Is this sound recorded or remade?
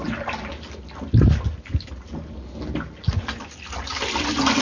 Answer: recorded